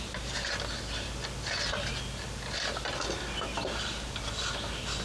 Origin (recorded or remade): recorded